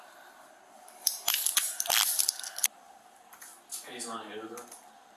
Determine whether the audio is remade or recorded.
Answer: recorded